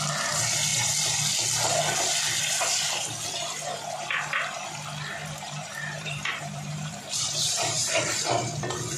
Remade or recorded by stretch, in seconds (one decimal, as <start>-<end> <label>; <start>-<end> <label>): 0.0-5.2 recorded; 5.2-8.3 remade; 8.3-9.0 recorded